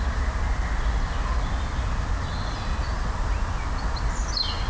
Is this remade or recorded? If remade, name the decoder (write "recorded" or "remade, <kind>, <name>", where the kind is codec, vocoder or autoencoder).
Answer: recorded